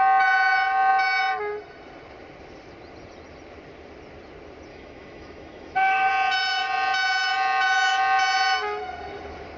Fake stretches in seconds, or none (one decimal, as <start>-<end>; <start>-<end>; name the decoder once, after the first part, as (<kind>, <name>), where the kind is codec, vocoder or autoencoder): 4.7-6.1 (autoencoder, DAC-VAE)